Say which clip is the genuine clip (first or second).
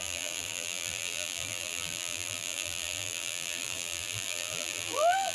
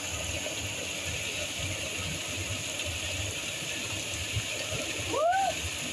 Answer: second